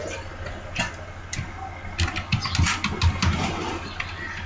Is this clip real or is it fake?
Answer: real